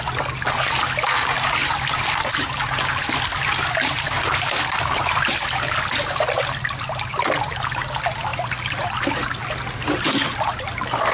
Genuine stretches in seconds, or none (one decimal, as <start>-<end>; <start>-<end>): 0.0-11.1